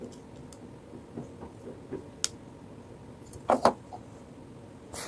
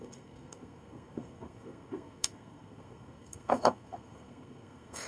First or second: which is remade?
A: second